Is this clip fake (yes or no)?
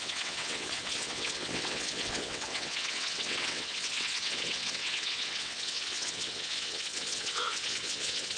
yes